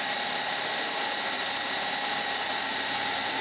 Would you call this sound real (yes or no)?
yes